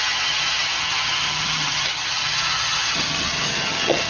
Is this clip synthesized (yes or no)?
yes